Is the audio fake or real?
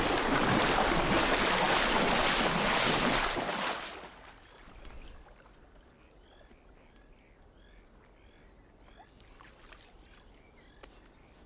real